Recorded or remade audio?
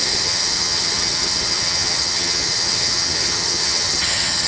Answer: remade